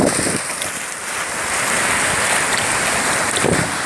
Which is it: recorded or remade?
recorded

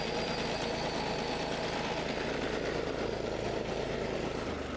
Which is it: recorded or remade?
recorded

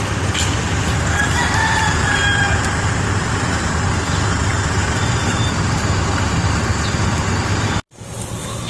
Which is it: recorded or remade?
remade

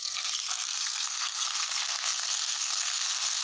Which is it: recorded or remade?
remade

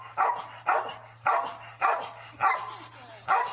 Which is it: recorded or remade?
recorded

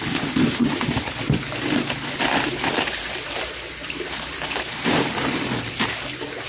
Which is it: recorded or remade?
recorded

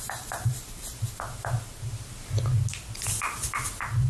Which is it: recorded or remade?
recorded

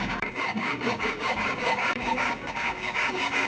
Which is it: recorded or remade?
remade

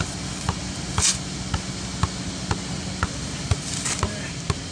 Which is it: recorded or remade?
recorded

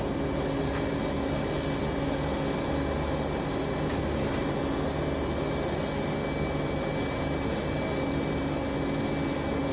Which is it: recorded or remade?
recorded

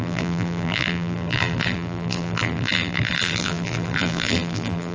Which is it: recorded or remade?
remade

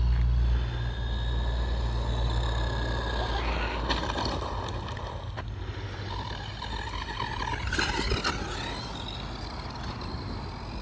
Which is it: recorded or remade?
recorded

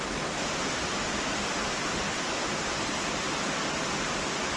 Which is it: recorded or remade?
recorded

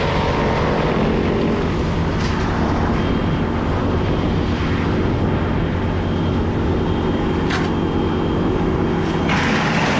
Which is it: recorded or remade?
recorded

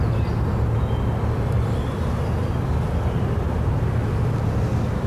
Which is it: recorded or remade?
recorded